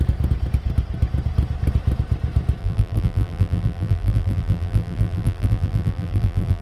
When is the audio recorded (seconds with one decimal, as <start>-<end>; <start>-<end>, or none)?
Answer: 0.0-2.6